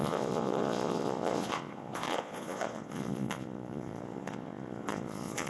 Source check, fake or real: fake